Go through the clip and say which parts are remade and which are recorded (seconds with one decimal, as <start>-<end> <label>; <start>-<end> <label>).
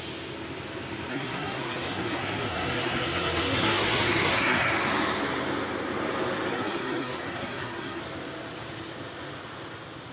0.0-1.1 recorded; 1.1-4.7 remade; 4.7-6.5 recorded; 6.5-8.0 remade; 8.0-10.1 recorded